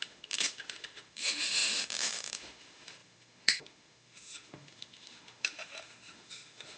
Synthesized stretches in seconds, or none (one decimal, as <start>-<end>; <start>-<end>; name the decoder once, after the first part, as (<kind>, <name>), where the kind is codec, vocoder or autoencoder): 0.0-6.8 (autoencoder, DAC-VAE)